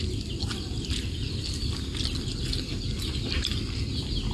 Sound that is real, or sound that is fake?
real